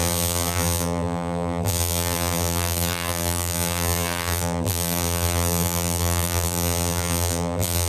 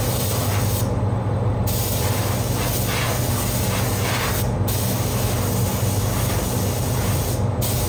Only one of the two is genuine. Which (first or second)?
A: second